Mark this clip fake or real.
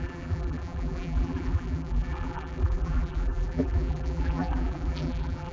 fake